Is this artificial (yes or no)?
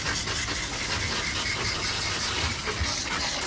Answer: no